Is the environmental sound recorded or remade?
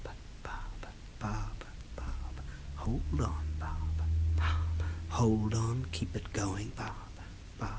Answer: recorded